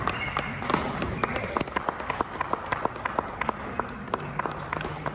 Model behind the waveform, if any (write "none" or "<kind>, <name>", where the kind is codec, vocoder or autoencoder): none